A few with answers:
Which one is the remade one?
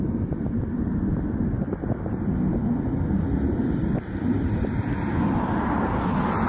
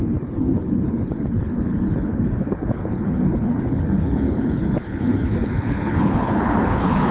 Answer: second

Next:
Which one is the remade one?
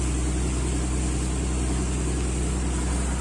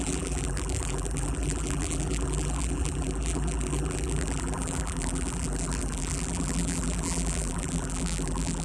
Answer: second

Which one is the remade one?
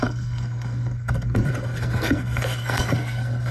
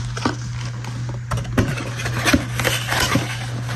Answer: first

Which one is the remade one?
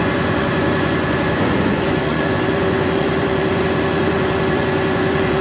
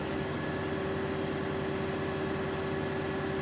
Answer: first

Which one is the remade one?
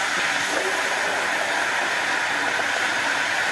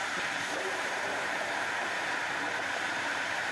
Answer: second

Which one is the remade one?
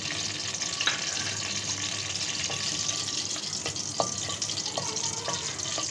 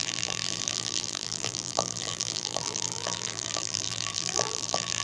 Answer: second